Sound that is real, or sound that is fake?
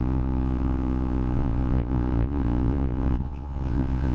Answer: fake